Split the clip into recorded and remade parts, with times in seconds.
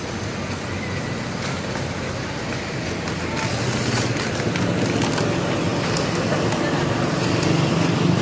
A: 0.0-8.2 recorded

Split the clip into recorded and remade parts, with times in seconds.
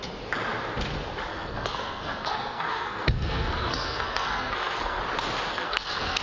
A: 0.0-1.3 recorded; 1.3-5.0 remade; 5.0-5.5 recorded; 5.5-6.2 remade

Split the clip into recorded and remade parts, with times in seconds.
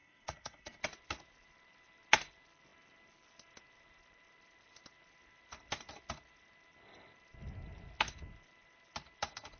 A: 0.0-0.8 remade; 0.8-9.6 recorded